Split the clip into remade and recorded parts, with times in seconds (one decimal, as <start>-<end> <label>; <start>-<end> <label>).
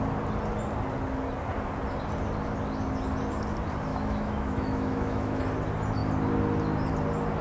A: 0.0-3.9 recorded; 3.9-5.4 remade; 5.4-7.4 recorded